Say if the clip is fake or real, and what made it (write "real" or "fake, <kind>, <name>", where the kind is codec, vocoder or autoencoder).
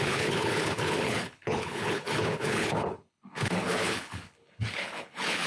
fake, codec, HILCodec